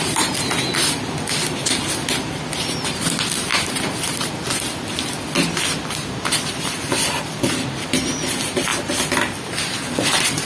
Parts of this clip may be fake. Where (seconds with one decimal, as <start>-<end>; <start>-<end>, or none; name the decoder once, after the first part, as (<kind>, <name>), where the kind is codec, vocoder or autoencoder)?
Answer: none